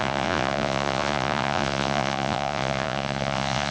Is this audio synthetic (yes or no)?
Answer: yes